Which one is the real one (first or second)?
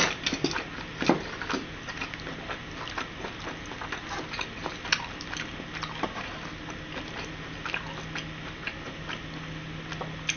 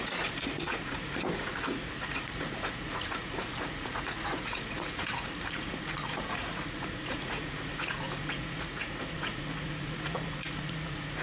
first